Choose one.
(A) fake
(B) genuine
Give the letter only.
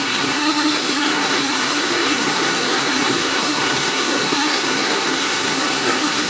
A